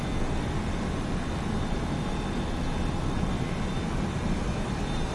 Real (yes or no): yes